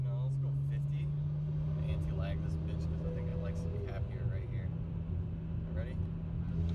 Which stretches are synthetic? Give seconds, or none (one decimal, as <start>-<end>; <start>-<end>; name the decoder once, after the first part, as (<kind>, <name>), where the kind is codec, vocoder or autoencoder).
none